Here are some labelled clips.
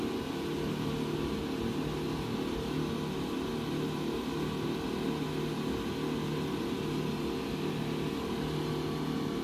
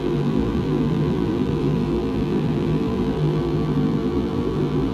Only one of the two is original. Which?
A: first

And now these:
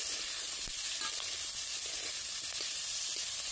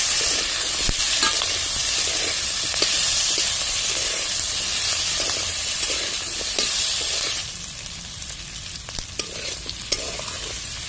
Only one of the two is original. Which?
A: first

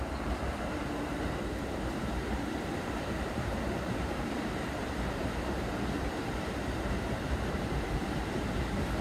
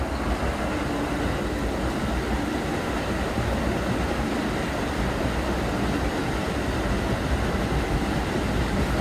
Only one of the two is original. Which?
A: second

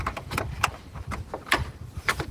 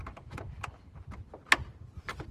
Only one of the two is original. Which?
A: second